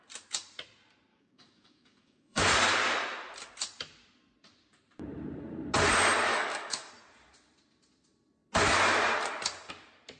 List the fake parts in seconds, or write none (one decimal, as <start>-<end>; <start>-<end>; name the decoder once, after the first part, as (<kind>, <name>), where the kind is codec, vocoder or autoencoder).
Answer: 1.1-2.4 (codec, DAC); 6.3-6.9